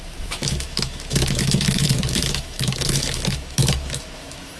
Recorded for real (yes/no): no